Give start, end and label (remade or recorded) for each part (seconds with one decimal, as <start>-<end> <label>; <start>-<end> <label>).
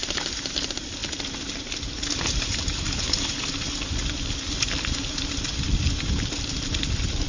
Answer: 0.0-7.3 recorded